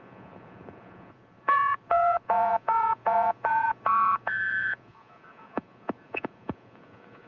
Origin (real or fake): fake